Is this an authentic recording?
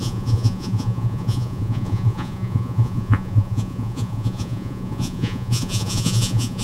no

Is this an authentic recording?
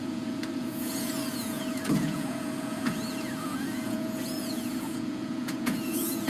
no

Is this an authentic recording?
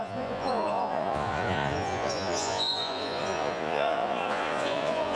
no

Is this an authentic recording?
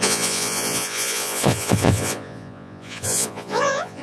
no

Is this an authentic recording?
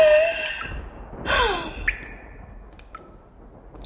yes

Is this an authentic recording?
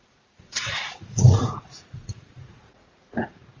no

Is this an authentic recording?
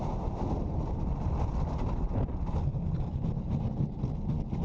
yes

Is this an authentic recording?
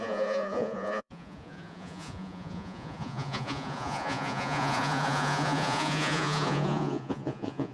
no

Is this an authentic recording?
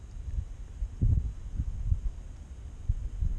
yes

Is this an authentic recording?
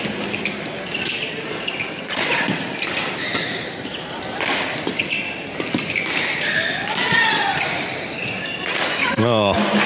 yes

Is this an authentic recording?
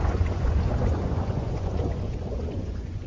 no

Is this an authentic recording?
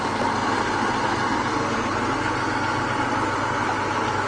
yes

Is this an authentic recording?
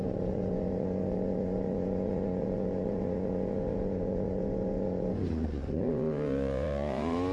no